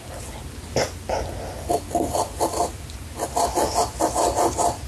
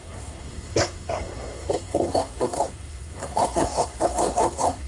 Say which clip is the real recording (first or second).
first